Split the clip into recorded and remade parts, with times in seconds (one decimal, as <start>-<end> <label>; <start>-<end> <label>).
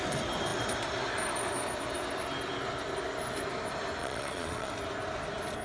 0.0-4.0 recorded; 4.0-4.7 remade; 4.7-5.6 recorded